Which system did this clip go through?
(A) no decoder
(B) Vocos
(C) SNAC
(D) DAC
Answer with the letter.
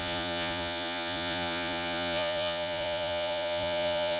B